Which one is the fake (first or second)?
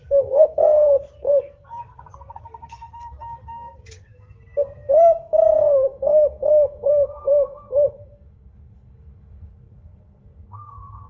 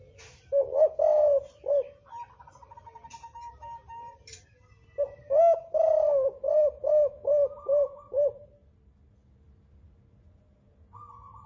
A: first